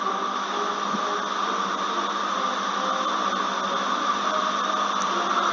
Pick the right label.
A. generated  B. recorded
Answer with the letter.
B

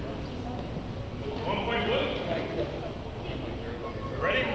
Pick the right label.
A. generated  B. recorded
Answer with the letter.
B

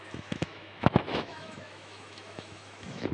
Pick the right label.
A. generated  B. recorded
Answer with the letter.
A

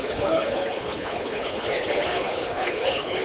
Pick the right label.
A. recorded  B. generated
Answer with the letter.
B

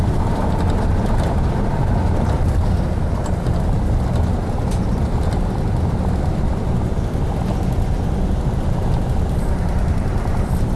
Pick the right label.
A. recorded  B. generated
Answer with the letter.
B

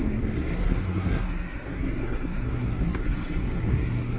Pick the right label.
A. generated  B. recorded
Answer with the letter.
A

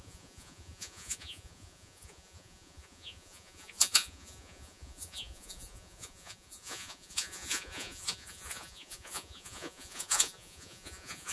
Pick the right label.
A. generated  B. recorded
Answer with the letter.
A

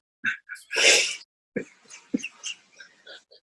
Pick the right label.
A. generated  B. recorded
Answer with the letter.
B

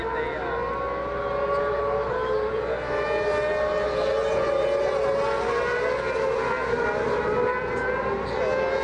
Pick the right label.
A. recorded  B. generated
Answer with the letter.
A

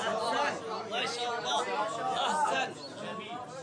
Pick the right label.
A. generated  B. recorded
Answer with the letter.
B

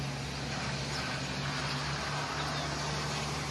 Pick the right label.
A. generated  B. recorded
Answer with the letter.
B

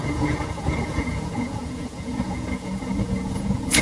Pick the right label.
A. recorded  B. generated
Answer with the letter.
B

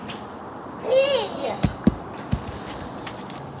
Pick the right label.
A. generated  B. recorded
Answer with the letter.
B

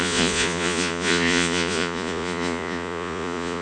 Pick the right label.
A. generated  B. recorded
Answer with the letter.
A